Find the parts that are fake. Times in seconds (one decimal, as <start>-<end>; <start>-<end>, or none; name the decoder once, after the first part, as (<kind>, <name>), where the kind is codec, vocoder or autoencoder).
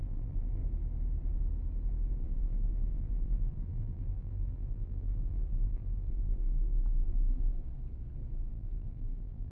0.0-0.6 (vocoder, BigVGAN v2); 2.2-7.5; 8.5-9.5